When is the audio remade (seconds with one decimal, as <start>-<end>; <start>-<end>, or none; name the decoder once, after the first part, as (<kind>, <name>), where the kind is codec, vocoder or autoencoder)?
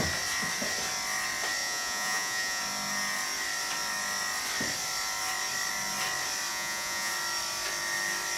1.6-2.6 (vocoder, Vocos); 6.5-7.1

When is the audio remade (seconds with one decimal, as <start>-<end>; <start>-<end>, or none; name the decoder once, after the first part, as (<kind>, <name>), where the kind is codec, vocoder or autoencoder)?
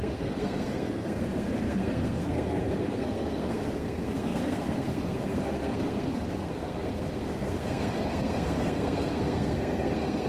0.0-10.3 (codec, SNAC)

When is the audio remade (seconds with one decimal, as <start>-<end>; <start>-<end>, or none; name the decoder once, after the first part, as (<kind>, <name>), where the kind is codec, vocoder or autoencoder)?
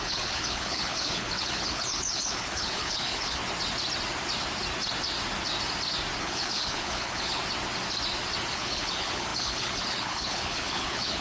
0.0-3.4 (codec, HILCodec); 6.2-7.4; 8.5-11.2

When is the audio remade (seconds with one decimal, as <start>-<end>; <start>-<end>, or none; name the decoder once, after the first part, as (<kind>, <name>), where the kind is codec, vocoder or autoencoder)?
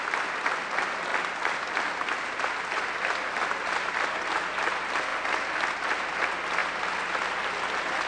none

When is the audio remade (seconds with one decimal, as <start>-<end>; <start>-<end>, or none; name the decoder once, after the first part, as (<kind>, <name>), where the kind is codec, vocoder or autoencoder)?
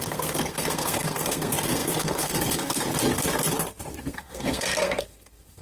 0.0-2.9 (codec, SNAC); 4.0-5.6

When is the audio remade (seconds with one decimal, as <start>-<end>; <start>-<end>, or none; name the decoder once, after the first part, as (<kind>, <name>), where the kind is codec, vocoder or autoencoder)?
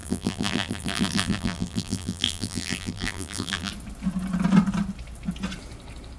0.0-3.7 (vocoder, BigVGAN v2)